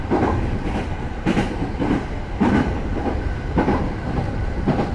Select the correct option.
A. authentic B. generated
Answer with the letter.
B